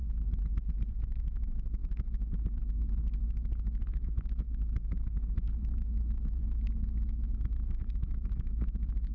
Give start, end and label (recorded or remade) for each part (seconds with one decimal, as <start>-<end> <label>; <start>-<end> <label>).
0.0-0.9 recorded; 0.9-9.1 remade